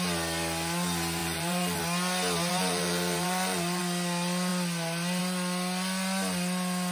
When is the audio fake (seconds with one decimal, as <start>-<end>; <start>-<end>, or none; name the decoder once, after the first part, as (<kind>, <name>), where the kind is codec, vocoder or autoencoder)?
1.2-1.8 (vocoder, BigVGAN v2); 2.5-3.8